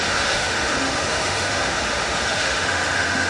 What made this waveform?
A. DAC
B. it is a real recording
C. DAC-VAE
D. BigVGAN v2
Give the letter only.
C